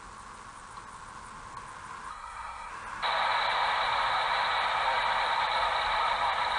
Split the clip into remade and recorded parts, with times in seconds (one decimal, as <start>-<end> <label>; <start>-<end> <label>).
0.0-2.1 recorded; 2.1-2.7 remade; 2.7-6.6 recorded